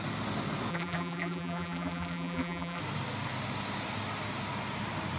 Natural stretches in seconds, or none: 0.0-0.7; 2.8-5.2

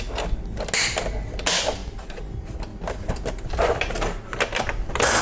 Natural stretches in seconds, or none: 0.0-5.2

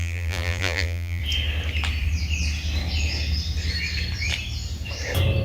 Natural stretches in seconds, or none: 1.2-5.4